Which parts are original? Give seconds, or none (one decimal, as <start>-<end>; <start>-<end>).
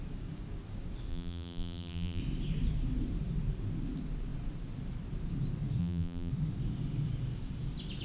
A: 0.0-1.1; 2.2-5.8; 6.3-8.0